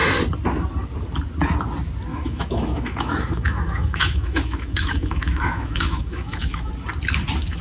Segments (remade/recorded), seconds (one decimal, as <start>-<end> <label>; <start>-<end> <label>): 0.0-2.1 recorded; 2.1-6.7 remade; 6.7-7.6 recorded